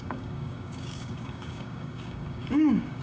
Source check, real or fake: fake